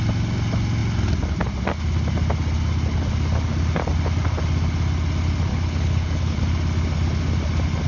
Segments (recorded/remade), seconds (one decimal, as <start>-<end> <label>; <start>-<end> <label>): 0.0-5.5 recorded; 5.5-6.4 remade; 6.4-7.9 recorded